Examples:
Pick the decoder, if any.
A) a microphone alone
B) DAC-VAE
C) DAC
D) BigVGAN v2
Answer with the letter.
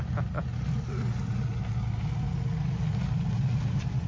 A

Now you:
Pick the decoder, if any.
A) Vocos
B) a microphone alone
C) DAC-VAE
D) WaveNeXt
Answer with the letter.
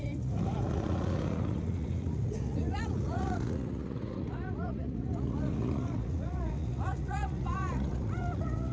A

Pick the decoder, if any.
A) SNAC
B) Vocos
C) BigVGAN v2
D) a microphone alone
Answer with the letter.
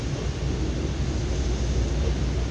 D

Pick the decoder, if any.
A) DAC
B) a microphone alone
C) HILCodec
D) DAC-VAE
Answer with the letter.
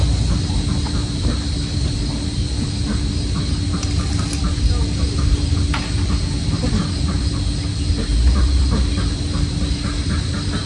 B